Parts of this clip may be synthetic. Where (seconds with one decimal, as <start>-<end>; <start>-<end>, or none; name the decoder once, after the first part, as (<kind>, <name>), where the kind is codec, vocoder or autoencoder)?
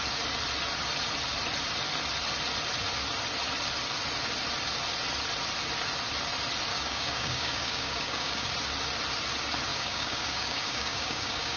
6.7-8.5 (codec, DAC); 9.7-11.6